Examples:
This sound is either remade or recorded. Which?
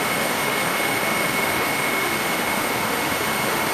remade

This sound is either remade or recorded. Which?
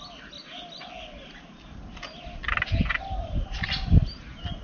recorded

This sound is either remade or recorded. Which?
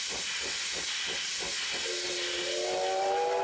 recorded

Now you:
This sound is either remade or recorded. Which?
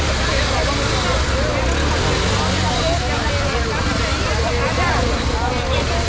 recorded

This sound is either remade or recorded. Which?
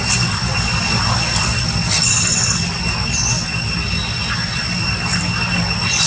recorded